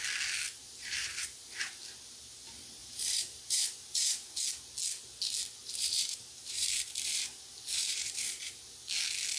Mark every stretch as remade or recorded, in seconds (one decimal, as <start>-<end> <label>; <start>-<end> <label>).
0.0-0.6 recorded; 0.6-1.8 remade; 1.8-2.8 recorded; 2.8-4.4 remade; 4.4-5.6 recorded; 5.6-8.6 remade; 8.6-9.4 recorded